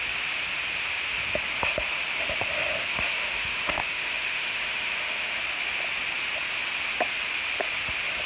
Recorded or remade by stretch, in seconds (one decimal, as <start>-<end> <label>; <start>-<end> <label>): 0.0-2.9 recorded; 2.9-5.4 remade; 5.4-8.3 recorded